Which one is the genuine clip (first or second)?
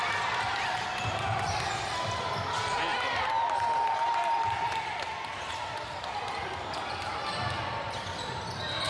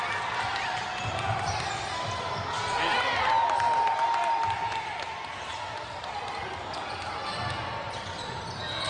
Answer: second